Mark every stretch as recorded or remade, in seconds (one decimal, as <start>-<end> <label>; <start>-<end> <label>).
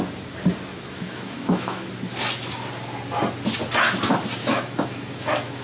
0.0-0.7 recorded; 0.7-1.9 remade; 1.9-4.4 recorded; 4.4-5.6 remade